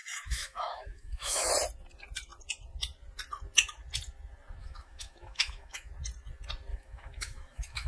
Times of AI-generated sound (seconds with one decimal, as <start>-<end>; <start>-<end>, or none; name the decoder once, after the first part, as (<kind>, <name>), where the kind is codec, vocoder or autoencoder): 0.0-1.5 (autoencoder, DAC-VAE); 4.6-5.9; 6.7-7.9